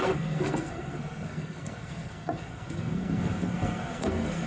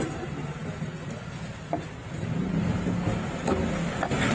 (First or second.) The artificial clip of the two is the first